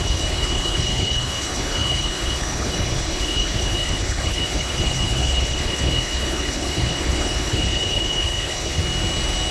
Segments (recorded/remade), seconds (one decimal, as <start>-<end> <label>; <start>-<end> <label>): 0.0-8.8 remade; 8.8-9.5 recorded